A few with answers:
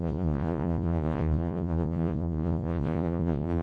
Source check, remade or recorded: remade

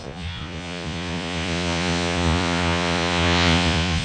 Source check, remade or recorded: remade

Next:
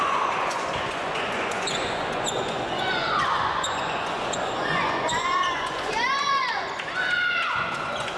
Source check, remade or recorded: remade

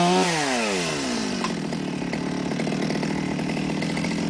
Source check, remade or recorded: recorded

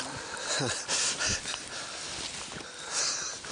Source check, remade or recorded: recorded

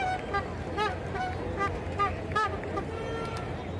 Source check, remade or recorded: recorded